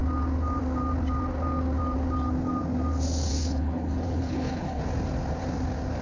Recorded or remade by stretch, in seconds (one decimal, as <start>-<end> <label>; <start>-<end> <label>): 0.0-3.3 recorded; 3.3-4.8 remade; 4.8-6.0 recorded